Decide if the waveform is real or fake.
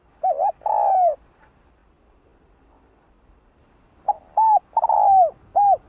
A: real